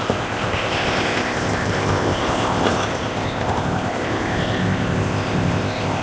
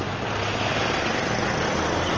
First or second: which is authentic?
second